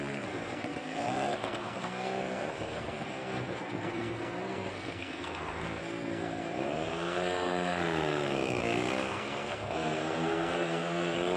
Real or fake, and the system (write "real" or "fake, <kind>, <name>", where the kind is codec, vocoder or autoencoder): fake, codec, SNAC